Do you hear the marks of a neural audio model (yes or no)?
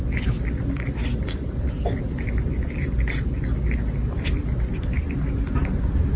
no